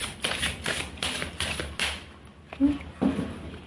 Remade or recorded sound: recorded